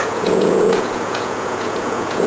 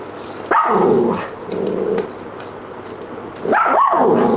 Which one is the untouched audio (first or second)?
second